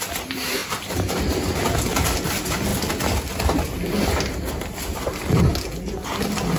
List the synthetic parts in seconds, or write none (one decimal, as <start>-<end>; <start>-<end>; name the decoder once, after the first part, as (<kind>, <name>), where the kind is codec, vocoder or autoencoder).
none